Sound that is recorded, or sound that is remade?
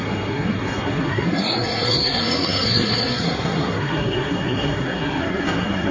remade